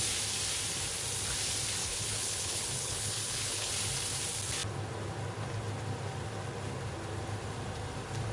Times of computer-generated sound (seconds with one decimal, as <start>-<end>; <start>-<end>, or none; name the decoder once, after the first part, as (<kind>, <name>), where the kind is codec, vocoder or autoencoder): 1.8-3.7 (codec, HILCodec)